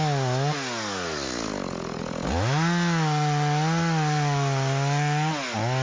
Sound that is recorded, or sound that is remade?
recorded